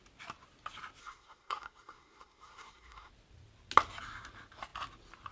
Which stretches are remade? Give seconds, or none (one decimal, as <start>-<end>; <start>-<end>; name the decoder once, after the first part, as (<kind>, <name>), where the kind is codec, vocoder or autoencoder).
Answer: 1.0-3.1 (codec, SNAC)